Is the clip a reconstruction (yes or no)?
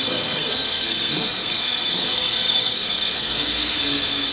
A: yes